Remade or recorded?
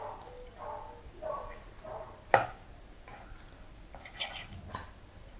recorded